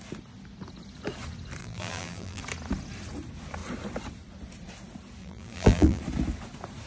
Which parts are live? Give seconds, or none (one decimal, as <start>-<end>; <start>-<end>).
0.0-1.6; 2.4-5.2; 6.0-6.9